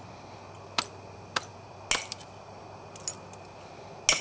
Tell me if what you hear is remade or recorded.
recorded